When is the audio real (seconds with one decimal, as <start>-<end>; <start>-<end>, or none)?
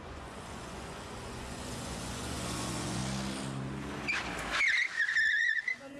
3.0-5.4